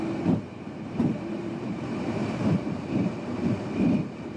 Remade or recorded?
remade